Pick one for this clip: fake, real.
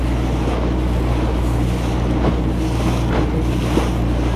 real